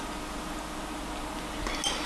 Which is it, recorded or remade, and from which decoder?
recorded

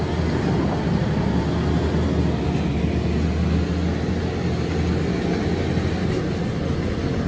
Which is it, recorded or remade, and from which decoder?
recorded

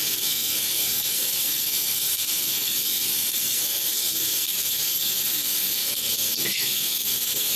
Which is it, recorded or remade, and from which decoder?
remade, codec, SNAC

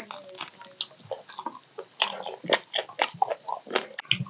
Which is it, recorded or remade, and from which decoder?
recorded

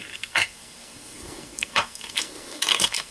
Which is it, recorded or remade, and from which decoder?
remade, codec, SNAC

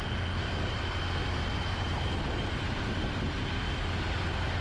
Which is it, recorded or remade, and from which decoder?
recorded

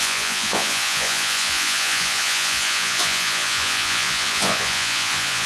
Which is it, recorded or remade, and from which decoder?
remade, vocoder, Vocos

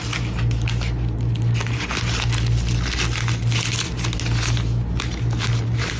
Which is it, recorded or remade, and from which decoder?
recorded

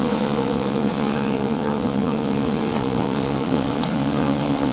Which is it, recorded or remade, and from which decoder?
remade, vocoder, WaveNeXt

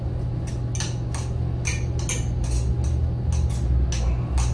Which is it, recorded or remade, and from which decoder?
recorded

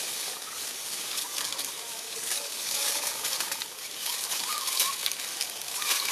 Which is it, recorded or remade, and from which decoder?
remade, codec, DAC